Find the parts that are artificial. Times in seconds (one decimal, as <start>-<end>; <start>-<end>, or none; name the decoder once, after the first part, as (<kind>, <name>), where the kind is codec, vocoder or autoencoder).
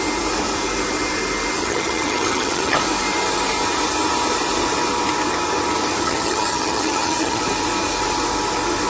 1.6-2.8 (vocoder, HiFi-GAN); 6.0-7.4